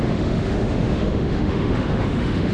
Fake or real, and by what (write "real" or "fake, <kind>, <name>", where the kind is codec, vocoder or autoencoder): fake, autoencoder, DAC-VAE